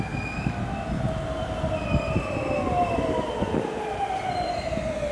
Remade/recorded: recorded